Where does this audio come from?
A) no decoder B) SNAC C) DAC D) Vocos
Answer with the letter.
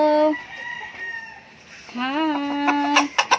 A